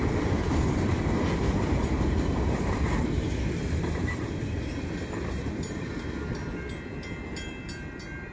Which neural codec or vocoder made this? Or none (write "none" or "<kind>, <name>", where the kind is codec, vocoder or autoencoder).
vocoder, BigVGAN v2